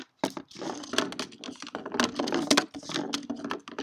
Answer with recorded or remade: recorded